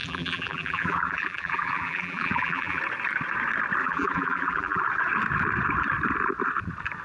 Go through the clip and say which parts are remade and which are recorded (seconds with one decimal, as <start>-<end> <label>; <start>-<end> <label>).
0.0-2.8 remade; 2.8-3.8 recorded; 3.8-4.8 remade; 4.8-7.0 recorded